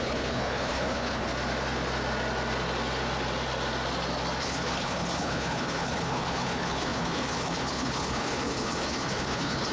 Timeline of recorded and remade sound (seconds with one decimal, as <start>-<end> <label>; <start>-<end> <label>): 0.0-1.3 remade; 1.3-4.4 recorded; 4.4-9.7 remade